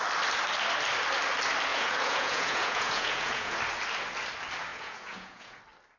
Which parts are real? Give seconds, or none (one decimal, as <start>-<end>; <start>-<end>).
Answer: 0.0-1.7; 3.6-4.7; 5.6-6.0